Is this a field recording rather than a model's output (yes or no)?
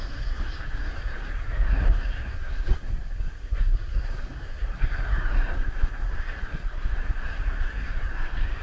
no